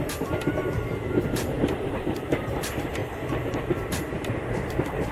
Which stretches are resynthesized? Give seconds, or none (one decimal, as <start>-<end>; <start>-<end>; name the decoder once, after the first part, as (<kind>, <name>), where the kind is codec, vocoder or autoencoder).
0.0-5.1 (vocoder, BigVGAN v2)